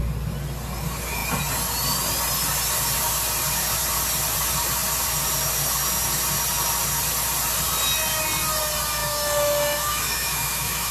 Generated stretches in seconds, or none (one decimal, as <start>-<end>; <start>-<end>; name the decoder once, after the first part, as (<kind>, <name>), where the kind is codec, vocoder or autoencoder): 9.0-10.9 (autoencoder, DAC-VAE)